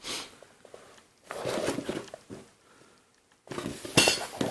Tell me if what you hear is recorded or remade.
recorded